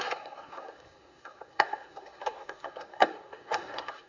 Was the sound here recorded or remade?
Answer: remade